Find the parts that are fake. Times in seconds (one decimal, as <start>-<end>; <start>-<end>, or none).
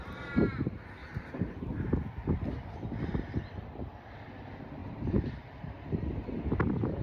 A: 1.0-2.0; 4.8-6.3